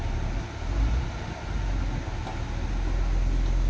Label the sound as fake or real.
real